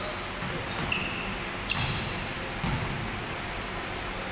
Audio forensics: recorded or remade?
recorded